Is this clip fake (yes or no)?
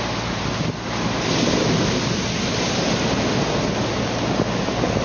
no